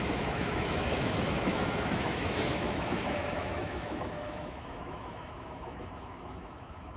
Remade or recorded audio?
remade